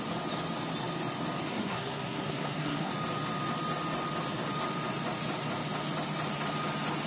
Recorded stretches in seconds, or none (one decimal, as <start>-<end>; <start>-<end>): 0.0-1.5; 2.9-7.1